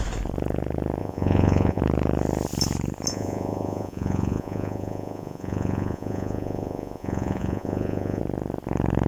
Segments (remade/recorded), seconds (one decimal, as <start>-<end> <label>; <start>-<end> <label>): 0.0-1.0 recorded; 1.0-1.8 remade; 1.8-3.1 recorded; 3.1-8.2 remade; 8.2-9.1 recorded